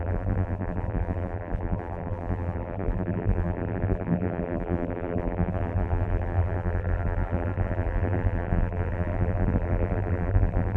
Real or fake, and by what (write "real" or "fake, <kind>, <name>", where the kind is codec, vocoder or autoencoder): fake, vocoder, BigVGAN v2